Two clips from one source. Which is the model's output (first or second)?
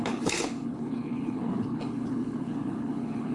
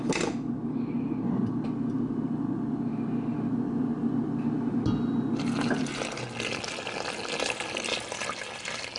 first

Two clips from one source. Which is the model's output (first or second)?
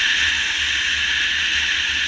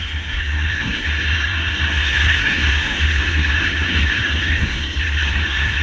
second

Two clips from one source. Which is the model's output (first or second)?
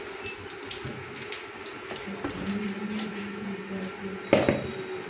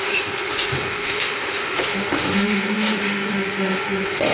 second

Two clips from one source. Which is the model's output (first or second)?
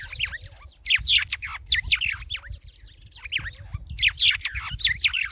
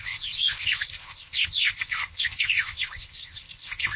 second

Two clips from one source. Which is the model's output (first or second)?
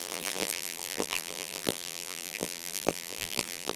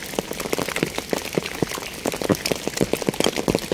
first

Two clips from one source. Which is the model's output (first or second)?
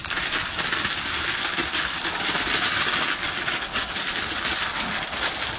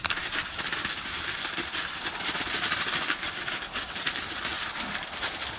second